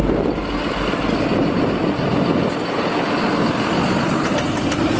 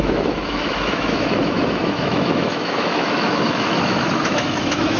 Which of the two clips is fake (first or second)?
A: second